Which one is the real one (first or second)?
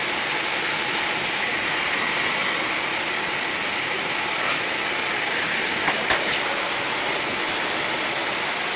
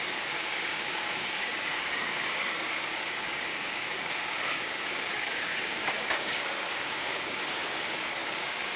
first